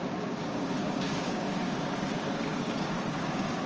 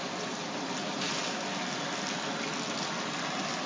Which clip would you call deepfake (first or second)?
first